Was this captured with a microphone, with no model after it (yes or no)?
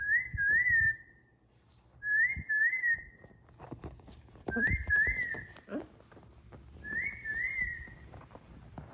no